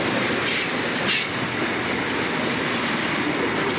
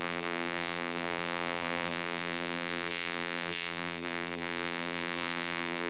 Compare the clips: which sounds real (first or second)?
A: first